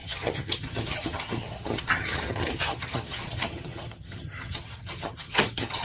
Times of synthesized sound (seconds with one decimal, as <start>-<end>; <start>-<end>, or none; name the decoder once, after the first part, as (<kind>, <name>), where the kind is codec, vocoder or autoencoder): 0.0-5.8 (vocoder, HiFi-GAN)